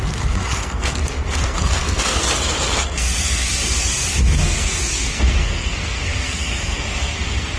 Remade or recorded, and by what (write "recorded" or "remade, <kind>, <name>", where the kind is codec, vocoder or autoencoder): remade, codec, SNAC